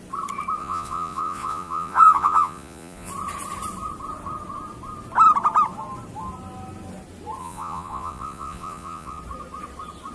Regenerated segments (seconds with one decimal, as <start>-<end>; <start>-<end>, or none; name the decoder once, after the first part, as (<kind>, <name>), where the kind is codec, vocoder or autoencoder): 0.6-3.1 (vocoder, Vocos); 7.4-9.2